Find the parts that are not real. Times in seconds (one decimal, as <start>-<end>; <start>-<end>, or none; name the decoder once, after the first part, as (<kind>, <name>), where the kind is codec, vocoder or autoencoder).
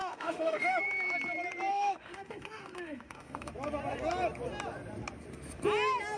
0.0-0.8 (autoencoder, DAC-VAE); 1.7-3.5